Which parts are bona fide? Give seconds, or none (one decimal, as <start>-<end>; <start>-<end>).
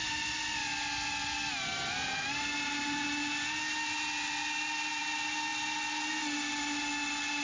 0.0-7.4